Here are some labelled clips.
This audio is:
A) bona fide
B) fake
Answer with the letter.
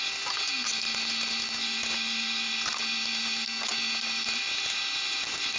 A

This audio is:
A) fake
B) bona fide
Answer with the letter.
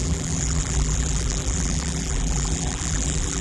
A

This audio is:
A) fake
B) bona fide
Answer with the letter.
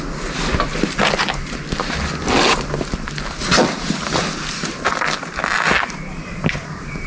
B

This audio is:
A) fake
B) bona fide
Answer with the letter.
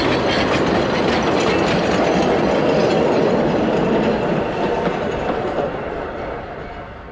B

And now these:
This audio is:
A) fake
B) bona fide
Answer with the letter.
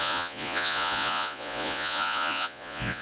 A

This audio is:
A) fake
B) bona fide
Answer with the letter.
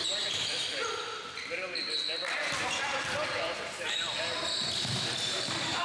A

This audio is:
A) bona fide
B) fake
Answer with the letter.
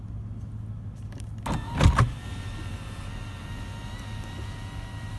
A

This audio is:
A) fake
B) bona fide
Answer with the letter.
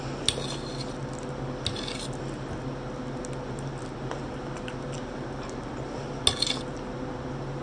B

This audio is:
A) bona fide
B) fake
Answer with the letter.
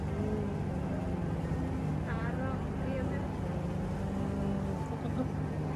A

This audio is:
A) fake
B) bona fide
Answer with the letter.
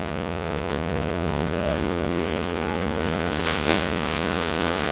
A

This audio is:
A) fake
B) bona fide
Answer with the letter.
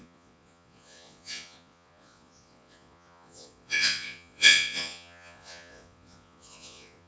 A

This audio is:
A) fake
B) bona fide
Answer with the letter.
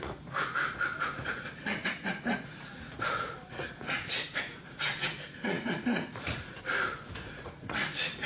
A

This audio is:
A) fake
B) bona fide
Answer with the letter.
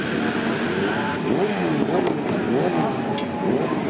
B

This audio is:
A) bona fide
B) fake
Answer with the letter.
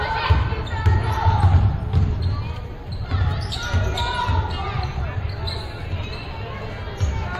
A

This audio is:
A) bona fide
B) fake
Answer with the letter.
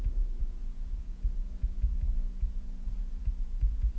B